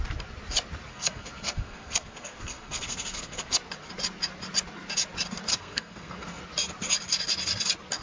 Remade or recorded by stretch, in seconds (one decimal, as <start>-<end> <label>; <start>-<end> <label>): 0.0-0.9 recorded; 0.9-3.6 remade; 3.6-5.5 recorded; 5.5-6.4 remade; 6.4-8.0 recorded